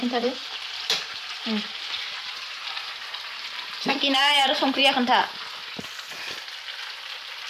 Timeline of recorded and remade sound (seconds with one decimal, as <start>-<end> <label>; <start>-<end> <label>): 0.0-4.8 remade; 4.8-6.8 recorded; 6.8-7.5 remade